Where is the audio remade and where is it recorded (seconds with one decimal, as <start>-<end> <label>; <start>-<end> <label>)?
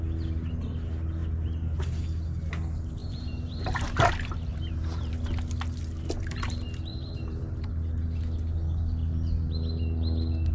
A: 0.0-3.0 recorded; 3.0-4.1 remade; 4.1-4.5 recorded; 4.5-5.1 remade; 5.1-6.9 recorded; 6.9-7.7 remade; 7.7-10.5 recorded